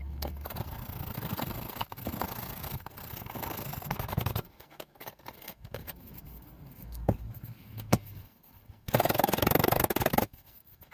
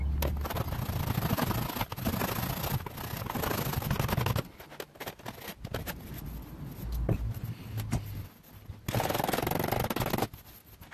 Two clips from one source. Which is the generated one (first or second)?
first